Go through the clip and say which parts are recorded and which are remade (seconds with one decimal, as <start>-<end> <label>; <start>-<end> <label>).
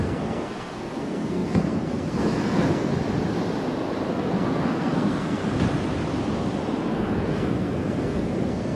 0.0-2.9 remade; 2.9-4.1 recorded; 4.1-5.4 remade; 5.4-6.9 recorded; 6.9-8.8 remade